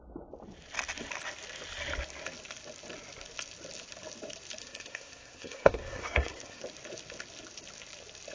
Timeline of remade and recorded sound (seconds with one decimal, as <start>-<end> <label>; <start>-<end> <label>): 0.0-4.6 recorded; 4.6-6.6 remade; 6.6-8.3 recorded